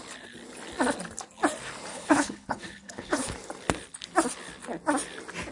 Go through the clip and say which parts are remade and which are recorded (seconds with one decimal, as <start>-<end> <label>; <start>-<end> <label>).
0.0-1.9 recorded; 1.9-3.3 remade; 3.3-5.5 recorded